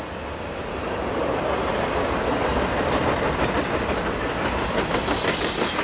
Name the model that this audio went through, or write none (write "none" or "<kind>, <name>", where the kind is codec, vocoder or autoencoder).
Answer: none